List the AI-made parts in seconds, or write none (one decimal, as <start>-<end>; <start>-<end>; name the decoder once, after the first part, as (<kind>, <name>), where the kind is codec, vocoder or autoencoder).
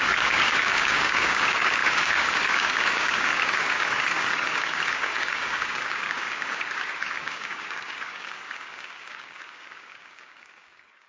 0.0-11.1 (codec, DAC)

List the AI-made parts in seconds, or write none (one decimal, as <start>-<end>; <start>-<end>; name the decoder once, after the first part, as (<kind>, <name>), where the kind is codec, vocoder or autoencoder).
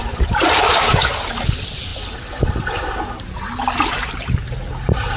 0.6-1.1 (codec, DAC)